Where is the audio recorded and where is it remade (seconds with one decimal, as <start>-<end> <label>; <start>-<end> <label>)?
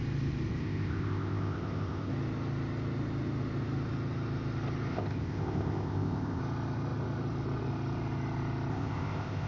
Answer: 0.0-0.6 recorded; 0.6-2.1 remade; 2.1-4.9 recorded; 4.9-6.4 remade; 6.4-8.7 recorded; 8.7-9.5 remade